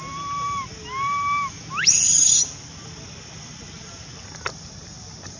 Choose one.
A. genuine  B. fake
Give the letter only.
A